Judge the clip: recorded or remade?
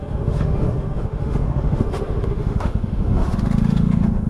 remade